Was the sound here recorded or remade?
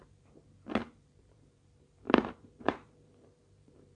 remade